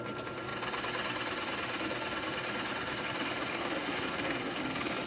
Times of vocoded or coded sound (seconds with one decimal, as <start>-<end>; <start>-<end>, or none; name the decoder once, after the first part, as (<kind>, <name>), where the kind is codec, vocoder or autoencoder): 3.5-4.6 (codec, SNAC)